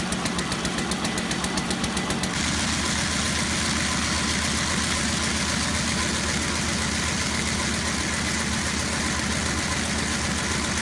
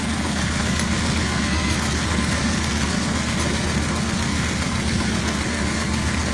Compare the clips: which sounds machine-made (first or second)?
second